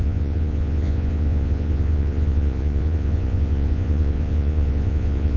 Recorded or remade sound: remade